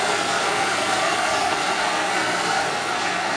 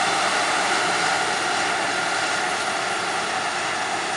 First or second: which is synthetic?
first